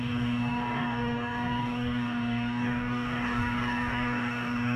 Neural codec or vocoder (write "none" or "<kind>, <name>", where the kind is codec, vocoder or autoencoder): codec, DAC